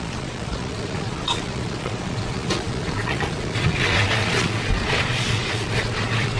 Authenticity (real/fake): fake